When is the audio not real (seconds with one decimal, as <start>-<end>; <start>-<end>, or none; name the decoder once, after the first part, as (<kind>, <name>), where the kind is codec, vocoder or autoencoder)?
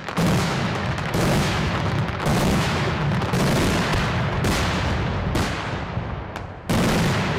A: 0.0-1.7 (autoencoder, DAC-VAE); 2.3-2.9